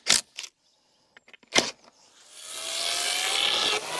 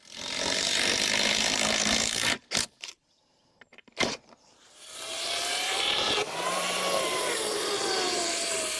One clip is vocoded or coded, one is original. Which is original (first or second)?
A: first